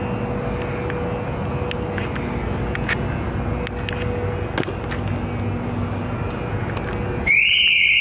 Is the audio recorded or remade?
recorded